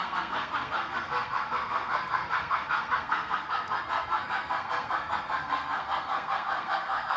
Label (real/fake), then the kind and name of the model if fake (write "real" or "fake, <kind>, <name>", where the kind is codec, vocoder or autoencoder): fake, codec, SNAC